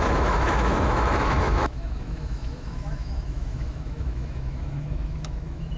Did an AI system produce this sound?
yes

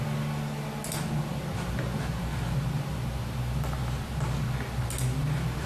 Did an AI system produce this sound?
no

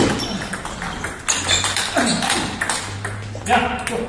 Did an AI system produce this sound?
no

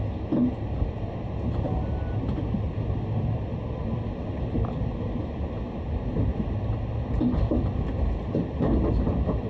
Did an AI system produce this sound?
no